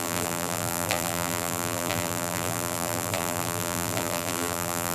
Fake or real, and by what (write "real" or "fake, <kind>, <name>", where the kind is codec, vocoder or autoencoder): fake, vocoder, BigVGAN v2